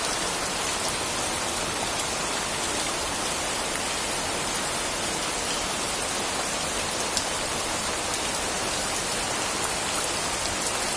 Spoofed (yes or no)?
no